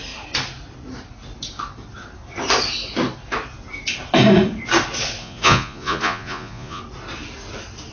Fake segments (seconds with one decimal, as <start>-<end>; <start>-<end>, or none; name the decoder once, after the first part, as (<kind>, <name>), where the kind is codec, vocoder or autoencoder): 5.2-6.8 (vocoder, Vocos)